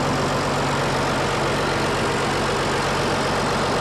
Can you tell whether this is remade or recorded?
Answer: recorded